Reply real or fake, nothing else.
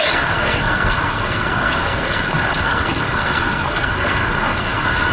fake